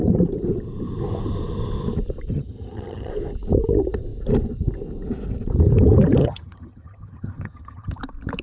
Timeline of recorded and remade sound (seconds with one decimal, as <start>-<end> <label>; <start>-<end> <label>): 0.0-2.3 recorded; 2.3-3.1 remade; 3.1-6.2 recorded; 6.2-8.0 remade; 8.0-8.4 recorded